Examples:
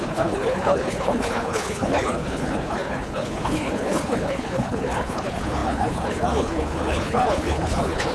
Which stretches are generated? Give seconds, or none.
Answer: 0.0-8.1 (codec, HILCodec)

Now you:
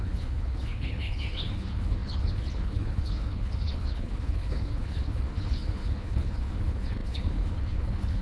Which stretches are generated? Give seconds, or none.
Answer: 0.0-8.2 (codec, HILCodec)

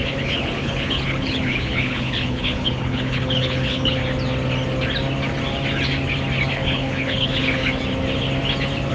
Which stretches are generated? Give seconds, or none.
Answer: 0.0-4.0 (codec, HILCodec); 6.5-7.6

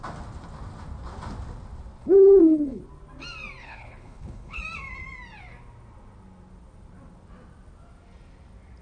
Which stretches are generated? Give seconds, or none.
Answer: 2.0-2.8 (codec, HILCodec); 3.6-4.6

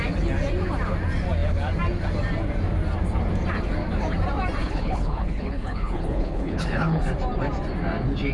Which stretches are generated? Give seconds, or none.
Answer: 4.6-7.0 (codec, HILCodec)

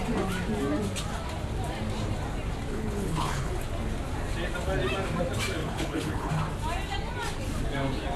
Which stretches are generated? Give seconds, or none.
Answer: 2.7-3.5 (codec, HILCodec); 5.6-6.3